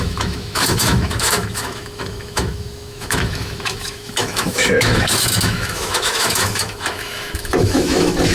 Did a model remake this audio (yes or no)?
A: yes